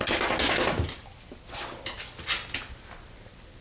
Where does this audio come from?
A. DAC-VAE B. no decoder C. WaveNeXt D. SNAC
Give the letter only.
B